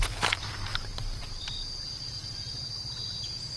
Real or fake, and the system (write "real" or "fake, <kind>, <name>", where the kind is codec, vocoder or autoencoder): fake, vocoder, BigVGAN v2